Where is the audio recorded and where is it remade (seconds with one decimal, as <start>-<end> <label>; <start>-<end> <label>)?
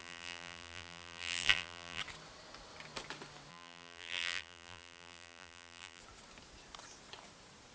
0.0-2.0 remade; 2.0-3.5 recorded; 3.5-6.0 remade; 6.0-7.7 recorded